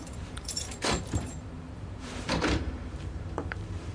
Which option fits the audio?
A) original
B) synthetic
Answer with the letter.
B